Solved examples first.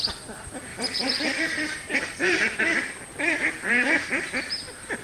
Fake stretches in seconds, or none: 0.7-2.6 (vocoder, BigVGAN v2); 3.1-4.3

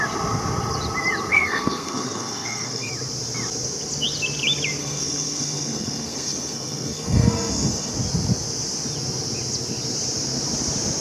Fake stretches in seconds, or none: 1.3-2.9 (codec, SNAC); 4.8-7.9

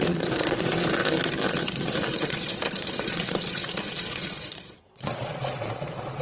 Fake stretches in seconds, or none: 0.0-1.0 (vocoder, Vocos); 1.5-6.2

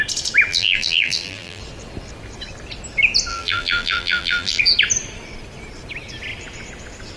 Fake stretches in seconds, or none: 0.5-1.6 (vocoder, BigVGAN v2); 3.3-4.6

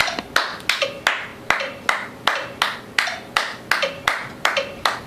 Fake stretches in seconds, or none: none